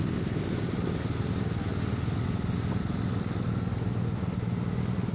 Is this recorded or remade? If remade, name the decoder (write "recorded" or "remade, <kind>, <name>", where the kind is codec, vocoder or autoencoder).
recorded